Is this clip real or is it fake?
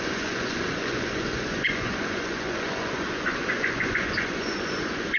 fake